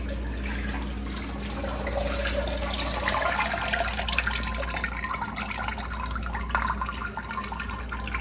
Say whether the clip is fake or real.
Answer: real